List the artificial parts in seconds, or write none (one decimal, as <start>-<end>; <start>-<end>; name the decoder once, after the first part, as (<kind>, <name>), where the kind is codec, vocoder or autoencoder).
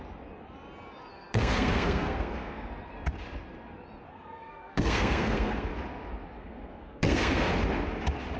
1.1-2.7 (codec, SNAC); 4.1-5.7; 6.4-7.5